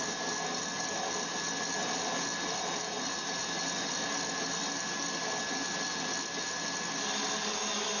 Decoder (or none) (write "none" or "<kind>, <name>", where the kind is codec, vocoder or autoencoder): none